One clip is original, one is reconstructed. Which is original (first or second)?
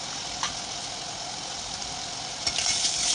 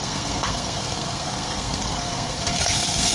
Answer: first